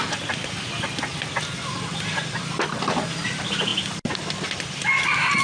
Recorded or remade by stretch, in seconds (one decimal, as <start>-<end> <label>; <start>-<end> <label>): 0.0-5.4 recorded